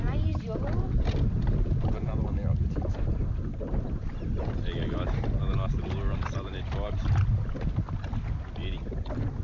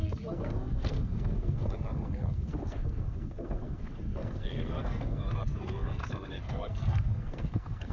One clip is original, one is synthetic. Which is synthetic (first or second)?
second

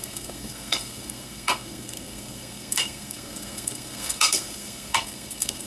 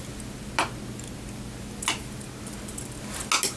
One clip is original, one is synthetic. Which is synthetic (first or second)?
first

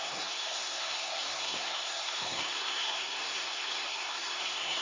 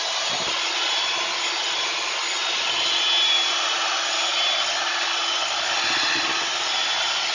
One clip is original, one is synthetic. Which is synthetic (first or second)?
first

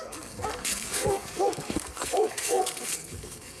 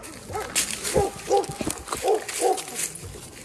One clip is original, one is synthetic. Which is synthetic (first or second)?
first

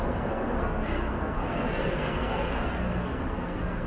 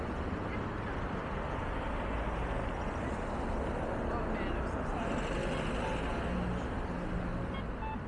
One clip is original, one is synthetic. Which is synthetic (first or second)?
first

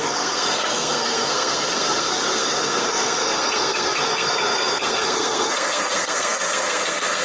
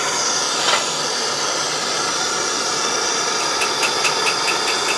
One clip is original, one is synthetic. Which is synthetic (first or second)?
first